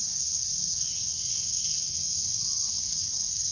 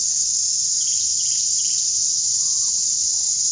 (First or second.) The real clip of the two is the second